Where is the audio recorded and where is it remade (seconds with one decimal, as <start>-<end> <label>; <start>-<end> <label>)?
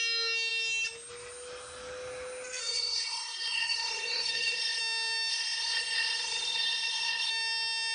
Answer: 0.0-2.6 recorded; 2.6-4.8 remade; 4.8-5.3 recorded; 5.3-7.3 remade; 7.3-7.9 recorded